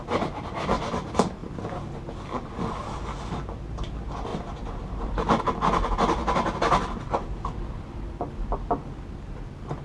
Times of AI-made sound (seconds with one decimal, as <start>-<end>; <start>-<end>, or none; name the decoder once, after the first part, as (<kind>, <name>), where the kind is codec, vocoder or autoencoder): 4.3-5.4 (vocoder, BigVGAN v2)